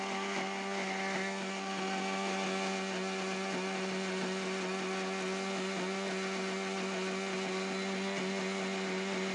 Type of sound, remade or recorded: recorded